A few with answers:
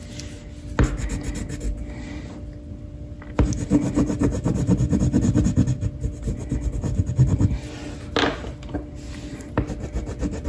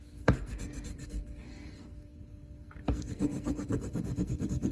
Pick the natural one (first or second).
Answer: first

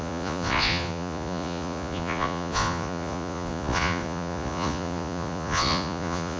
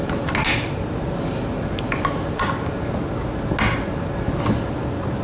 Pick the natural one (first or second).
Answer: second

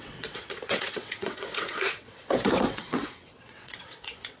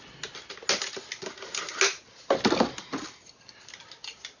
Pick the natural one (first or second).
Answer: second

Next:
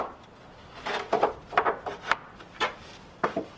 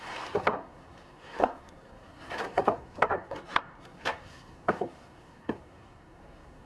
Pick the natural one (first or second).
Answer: first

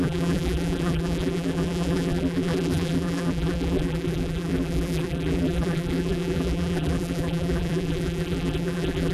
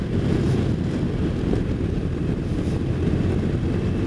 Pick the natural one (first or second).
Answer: second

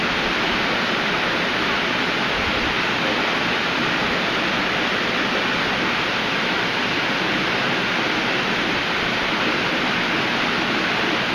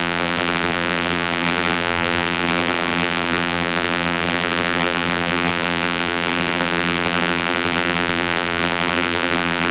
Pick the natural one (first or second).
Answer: first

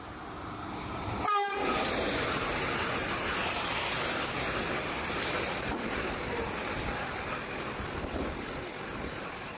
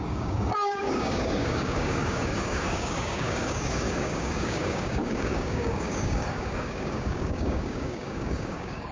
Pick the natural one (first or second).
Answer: first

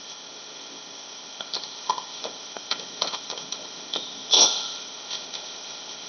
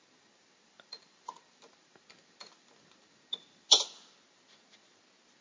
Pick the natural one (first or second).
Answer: second